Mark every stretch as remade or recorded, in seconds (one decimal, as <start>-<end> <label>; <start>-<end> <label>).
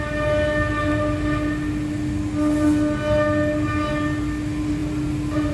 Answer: 0.0-5.5 recorded